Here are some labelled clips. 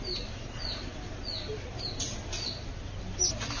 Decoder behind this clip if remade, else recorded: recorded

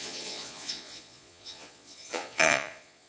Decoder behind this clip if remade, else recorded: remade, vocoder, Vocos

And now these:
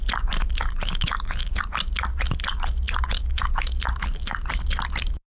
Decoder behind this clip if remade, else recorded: recorded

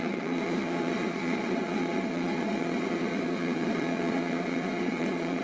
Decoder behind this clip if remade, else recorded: remade, vocoder, Vocos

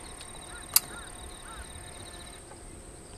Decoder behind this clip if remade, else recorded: recorded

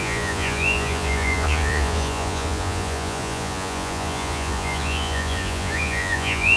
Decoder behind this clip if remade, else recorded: remade, vocoder, Vocos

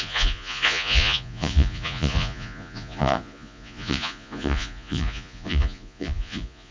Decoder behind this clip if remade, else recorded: remade, vocoder, Vocos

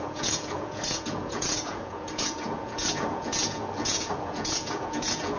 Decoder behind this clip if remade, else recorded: remade, vocoder, Vocos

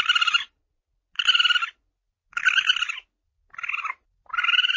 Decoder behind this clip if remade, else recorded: recorded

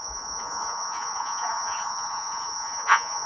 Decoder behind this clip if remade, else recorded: remade, vocoder, Vocos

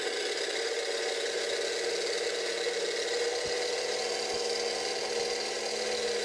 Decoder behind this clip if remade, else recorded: recorded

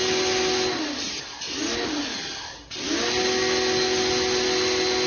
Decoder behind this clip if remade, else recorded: recorded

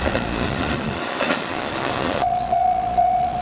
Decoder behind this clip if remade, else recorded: remade, vocoder, Vocos